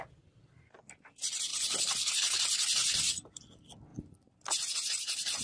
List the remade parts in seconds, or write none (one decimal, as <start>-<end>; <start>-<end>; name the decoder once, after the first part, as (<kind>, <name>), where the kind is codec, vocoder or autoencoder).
none